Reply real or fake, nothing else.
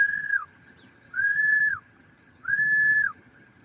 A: fake